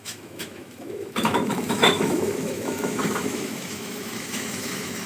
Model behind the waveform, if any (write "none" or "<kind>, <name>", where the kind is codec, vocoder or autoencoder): autoencoder, DAC-VAE